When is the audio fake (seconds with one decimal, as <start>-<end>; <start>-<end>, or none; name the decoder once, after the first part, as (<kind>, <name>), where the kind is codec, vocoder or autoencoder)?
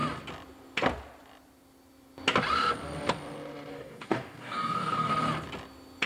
3.7-5.1 (codec, DAC)